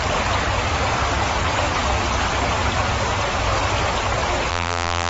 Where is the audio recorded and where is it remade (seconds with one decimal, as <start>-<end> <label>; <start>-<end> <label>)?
0.0-4.5 recorded; 4.5-5.1 remade